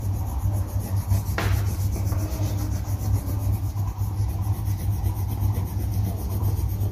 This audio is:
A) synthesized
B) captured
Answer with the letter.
B